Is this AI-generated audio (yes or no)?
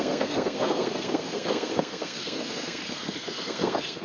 yes